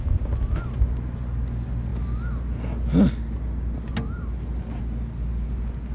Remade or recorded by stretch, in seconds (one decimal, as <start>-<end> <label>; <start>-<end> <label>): 0.0-5.9 recorded